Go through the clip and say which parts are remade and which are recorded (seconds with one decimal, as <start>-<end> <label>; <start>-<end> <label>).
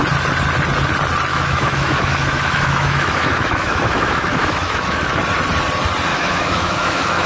0.0-1.3 recorded; 1.3-5.1 remade; 5.1-6.1 recorded; 6.1-7.3 remade